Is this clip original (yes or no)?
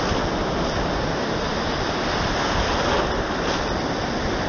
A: yes